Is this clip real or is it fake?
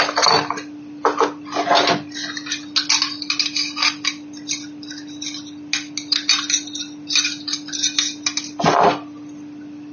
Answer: real